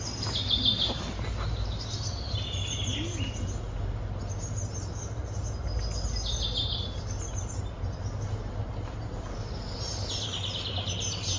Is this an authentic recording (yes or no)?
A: yes